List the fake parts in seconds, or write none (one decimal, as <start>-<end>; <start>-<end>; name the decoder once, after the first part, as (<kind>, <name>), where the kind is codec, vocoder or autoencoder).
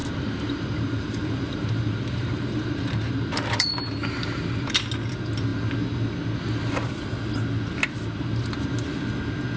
0.0-4.7 (vocoder, BigVGAN v2)